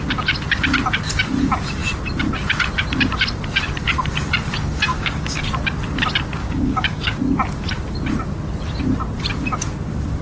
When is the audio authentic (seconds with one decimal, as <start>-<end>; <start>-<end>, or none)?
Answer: 0.0-4.9; 5.4-6.4; 7.2-10.2